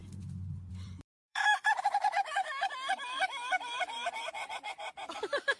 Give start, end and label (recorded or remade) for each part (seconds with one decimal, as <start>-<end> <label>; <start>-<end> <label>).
0.0-0.7 recorded; 0.7-1.5 remade; 1.5-4.5 recorded; 4.5-5.6 remade